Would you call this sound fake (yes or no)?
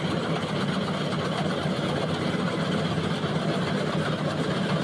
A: no